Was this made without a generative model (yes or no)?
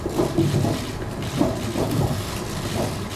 yes